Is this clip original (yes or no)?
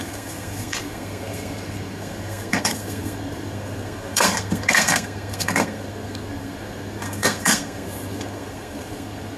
no